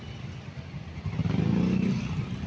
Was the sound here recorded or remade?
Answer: recorded